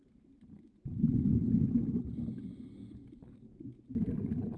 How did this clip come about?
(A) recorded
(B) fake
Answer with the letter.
A